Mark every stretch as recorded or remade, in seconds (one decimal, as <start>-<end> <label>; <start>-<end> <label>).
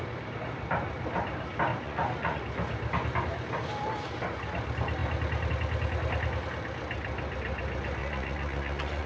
0.0-1.7 recorded; 1.7-2.4 remade; 2.4-8.0 recorded; 8.0-9.1 remade